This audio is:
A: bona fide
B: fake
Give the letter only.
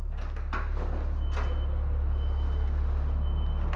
A